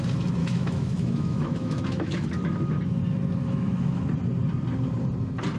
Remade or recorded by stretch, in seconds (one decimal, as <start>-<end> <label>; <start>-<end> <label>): 0.0-0.4 recorded; 0.4-2.7 remade; 2.7-3.4 recorded; 3.4-4.0 remade; 4.0-5.6 recorded